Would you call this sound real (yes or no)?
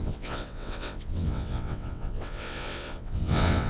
no